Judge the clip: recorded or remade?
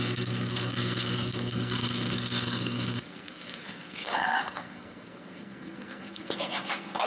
remade